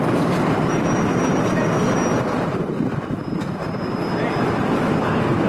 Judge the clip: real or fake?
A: real